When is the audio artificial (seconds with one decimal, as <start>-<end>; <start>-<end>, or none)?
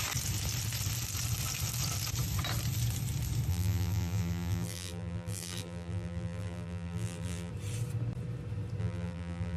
3.5-7.5; 8.8-9.6